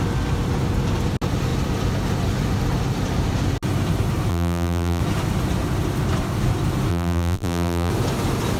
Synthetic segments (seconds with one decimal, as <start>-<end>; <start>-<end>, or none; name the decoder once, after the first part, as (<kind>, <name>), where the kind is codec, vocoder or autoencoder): 4.3-5.0 (vocoder, BigVGAN v2); 6.9-7.9